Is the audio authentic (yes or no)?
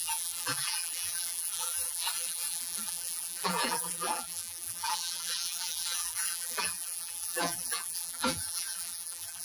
no